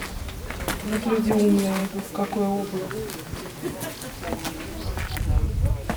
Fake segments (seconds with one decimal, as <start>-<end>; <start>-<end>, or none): 1.8-2.9